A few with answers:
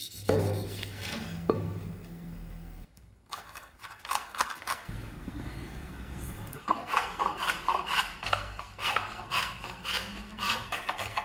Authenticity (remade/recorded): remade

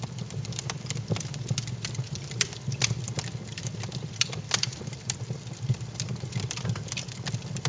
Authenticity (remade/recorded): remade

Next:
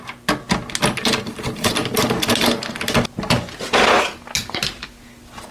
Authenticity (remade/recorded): recorded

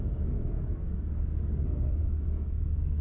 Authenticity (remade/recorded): remade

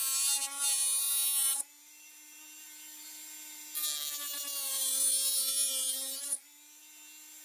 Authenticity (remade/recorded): recorded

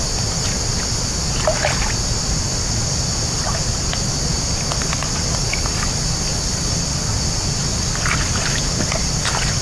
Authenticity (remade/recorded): recorded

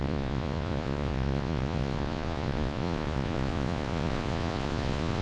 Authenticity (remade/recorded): remade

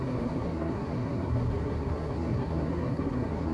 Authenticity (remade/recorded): remade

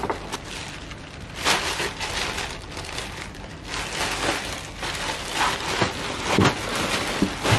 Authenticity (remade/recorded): recorded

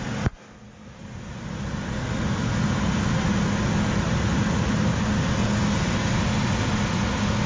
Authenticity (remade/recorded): recorded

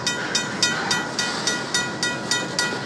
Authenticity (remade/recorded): recorded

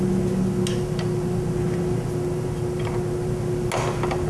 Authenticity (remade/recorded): recorded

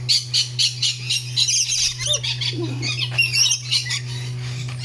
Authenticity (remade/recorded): recorded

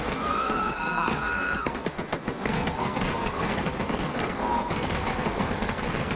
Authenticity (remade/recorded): remade